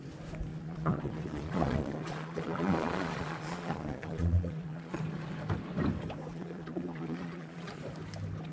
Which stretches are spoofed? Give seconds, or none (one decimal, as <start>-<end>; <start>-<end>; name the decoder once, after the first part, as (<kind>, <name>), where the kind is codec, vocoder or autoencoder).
0.5-5.0 (vocoder, Vocos); 6.3-7.8